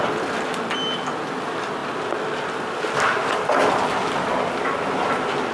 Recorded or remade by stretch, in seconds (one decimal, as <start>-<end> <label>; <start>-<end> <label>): 0.0-5.5 recorded